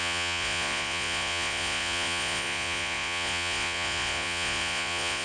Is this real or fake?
fake